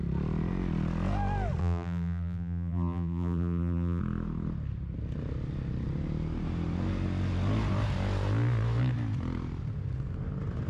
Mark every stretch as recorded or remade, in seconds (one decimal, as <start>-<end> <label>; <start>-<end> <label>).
0.0-1.6 recorded; 1.6-4.0 remade; 4.0-10.7 recorded